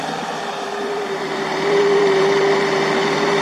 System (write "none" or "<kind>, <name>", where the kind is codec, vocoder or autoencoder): vocoder, BigVGAN v2